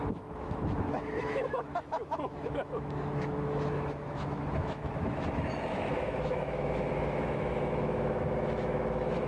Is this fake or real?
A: fake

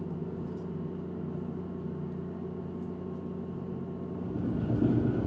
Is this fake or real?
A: real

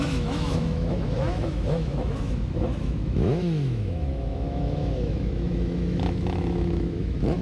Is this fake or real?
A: fake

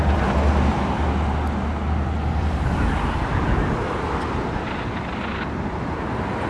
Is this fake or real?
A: real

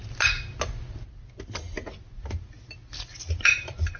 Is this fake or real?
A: real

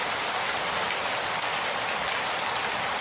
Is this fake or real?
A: real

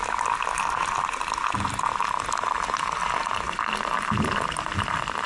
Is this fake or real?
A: real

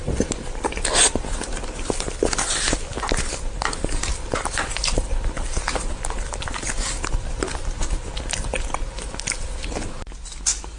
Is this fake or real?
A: real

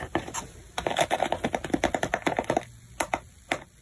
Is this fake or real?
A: real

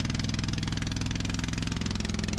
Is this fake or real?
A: real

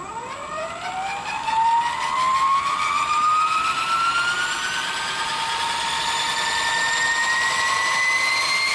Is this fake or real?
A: real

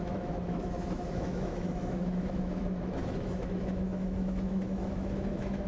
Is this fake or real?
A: fake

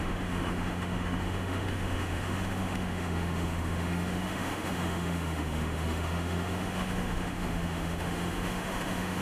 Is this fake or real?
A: fake